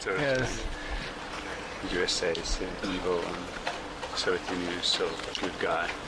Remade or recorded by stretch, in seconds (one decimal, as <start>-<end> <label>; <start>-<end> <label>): 0.0-1.5 recorded; 1.5-4.3 remade; 4.3-6.1 recorded

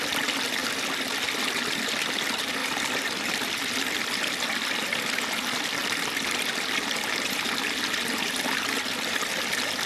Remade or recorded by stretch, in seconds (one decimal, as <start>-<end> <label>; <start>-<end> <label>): 0.0-9.9 recorded

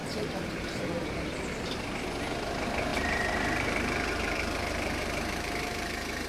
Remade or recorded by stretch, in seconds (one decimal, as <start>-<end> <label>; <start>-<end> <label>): 0.0-0.9 remade; 0.9-2.9 recorded; 2.9-6.3 remade

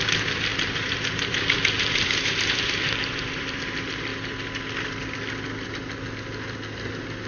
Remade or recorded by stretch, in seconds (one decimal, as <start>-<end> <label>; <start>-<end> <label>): 0.0-0.5 recorded; 0.5-3.6 remade; 3.6-7.3 recorded

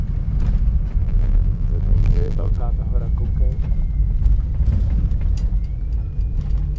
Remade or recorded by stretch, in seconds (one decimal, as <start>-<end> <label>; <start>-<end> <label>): 0.0-1.0 recorded; 1.0-2.6 remade; 2.6-6.8 recorded

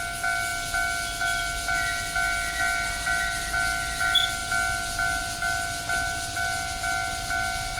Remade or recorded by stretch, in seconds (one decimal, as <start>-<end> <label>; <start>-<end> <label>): 0.0-7.8 recorded

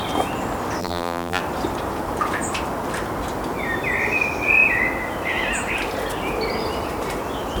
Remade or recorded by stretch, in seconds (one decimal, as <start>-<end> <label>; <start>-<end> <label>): 0.0-0.8 recorded; 0.8-1.4 remade; 1.4-7.6 recorded